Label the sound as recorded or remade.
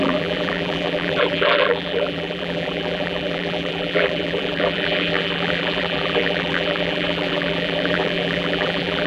remade